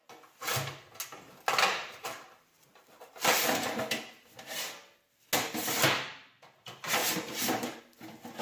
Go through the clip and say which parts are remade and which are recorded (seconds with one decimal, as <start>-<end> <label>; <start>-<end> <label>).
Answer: 0.0-1.7 recorded; 1.7-3.8 remade; 3.8-7.0 recorded; 7.0-7.8 remade; 7.8-8.4 recorded